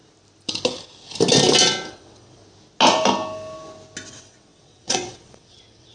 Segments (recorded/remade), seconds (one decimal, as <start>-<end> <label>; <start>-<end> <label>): 0.0-1.9 recorded; 1.9-2.4 remade; 2.4-4.1 recorded; 4.1-5.9 remade